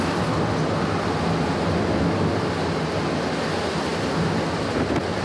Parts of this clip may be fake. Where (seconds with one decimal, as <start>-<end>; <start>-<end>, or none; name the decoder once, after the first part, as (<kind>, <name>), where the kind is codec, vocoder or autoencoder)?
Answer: none